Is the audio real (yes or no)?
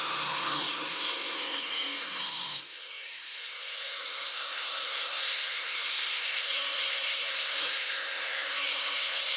no